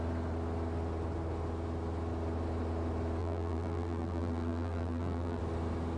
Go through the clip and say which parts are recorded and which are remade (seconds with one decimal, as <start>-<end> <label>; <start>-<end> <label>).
0.0-3.2 recorded; 3.2-5.4 remade; 5.4-6.0 recorded

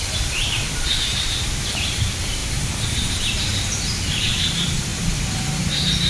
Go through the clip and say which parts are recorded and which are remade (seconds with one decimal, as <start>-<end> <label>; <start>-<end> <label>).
0.0-6.1 remade

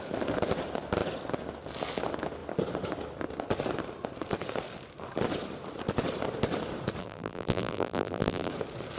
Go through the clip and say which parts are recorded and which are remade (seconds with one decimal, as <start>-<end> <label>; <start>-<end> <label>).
0.0-7.0 recorded; 7.0-8.5 remade; 8.5-9.0 recorded

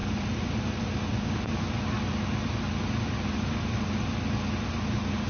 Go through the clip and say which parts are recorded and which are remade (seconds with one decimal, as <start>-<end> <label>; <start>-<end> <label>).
0.0-5.3 recorded

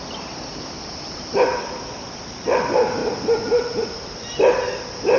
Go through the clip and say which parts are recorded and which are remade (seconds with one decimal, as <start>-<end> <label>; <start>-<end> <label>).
0.0-5.2 remade

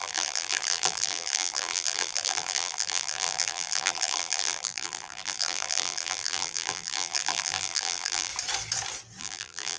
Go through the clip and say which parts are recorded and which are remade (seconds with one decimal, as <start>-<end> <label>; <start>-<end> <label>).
0.0-8.3 remade; 8.3-9.2 recorded; 9.2-9.8 remade

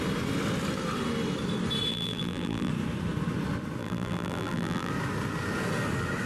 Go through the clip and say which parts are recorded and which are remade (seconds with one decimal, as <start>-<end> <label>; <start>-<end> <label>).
0.0-1.9 recorded; 1.9-2.7 remade; 2.7-3.8 recorded; 3.8-4.9 remade; 4.9-6.3 recorded

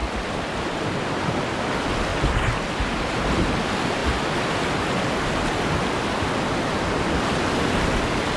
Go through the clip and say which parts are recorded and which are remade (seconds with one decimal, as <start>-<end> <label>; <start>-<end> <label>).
0.0-1.3 remade; 1.3-8.4 recorded